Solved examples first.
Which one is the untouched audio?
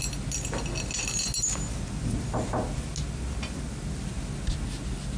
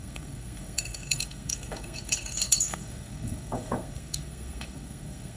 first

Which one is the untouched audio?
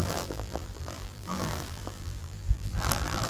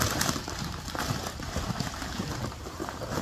second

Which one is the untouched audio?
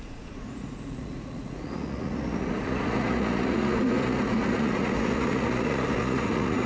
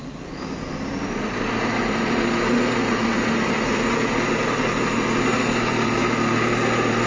second